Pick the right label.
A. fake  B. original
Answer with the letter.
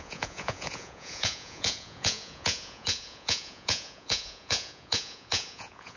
A